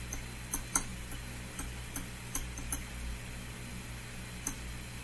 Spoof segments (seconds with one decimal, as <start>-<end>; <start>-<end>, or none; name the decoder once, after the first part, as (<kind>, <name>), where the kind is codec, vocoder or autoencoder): none